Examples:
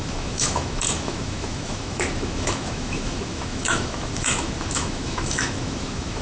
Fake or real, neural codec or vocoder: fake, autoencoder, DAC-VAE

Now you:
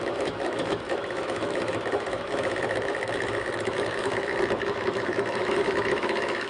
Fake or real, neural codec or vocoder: fake, autoencoder, DAC-VAE